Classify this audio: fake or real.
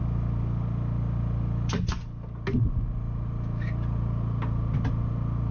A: real